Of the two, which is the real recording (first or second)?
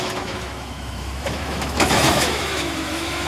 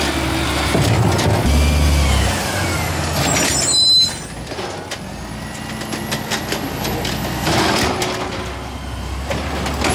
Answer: second